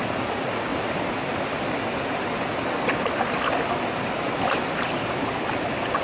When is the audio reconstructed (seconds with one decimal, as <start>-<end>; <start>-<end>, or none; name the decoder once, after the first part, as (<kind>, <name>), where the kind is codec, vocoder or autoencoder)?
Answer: none